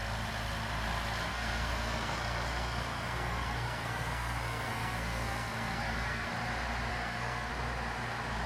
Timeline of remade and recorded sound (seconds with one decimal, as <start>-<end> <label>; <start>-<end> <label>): 0.0-1.3 recorded; 1.3-6.3 remade; 6.3-6.9 recorded; 6.9-7.5 remade; 7.5-8.5 recorded